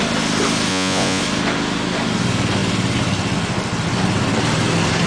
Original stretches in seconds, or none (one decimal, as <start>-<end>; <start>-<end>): 0.0-0.7; 1.2-5.1